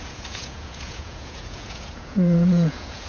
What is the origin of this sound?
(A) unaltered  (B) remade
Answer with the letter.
B